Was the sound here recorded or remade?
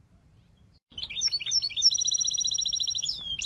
remade